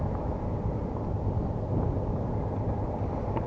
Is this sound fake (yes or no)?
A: no